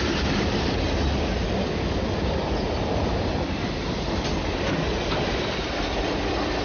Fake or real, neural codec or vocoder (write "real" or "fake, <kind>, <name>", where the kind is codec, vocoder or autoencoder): real